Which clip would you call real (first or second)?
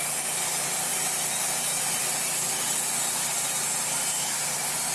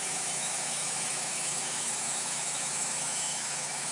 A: first